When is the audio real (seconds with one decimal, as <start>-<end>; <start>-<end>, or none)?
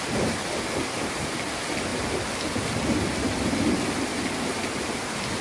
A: 0.0-5.4